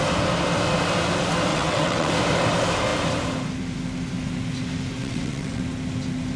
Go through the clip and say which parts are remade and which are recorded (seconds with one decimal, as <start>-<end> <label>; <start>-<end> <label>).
0.0-1.5 recorded; 1.5-2.1 remade; 2.1-5.0 recorded; 5.0-5.6 remade; 5.6-6.4 recorded